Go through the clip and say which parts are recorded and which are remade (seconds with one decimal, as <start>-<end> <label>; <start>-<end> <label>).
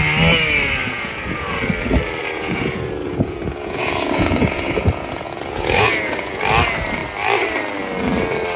0.0-0.8 recorded; 0.8-1.6 remade; 1.6-2.2 recorded; 2.2-6.4 remade; 6.4-8.6 recorded